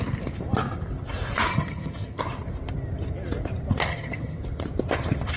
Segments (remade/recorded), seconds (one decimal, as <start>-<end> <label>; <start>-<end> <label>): 0.0-1.5 recorded; 1.5-2.2 remade; 2.2-3.9 recorded; 3.9-4.4 remade; 4.4-5.4 recorded